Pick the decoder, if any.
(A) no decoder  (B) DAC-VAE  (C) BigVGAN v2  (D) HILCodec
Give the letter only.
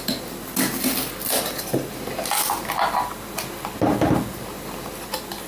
A